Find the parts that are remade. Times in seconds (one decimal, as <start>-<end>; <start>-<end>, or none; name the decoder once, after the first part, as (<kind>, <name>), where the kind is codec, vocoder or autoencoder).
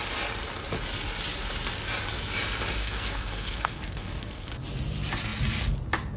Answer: 2.8-4.5 (codec, SNAC)